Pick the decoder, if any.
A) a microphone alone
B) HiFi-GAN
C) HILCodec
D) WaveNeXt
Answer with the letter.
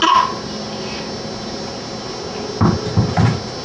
A